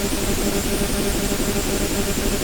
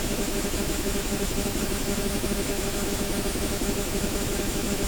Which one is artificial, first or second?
second